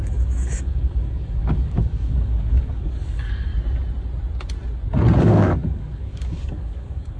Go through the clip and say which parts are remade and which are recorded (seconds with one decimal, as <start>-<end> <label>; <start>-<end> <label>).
0.0-3.5 remade; 3.5-5.2 recorded; 5.2-7.2 remade